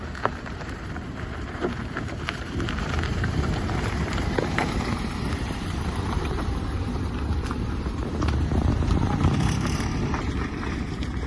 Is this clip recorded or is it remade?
remade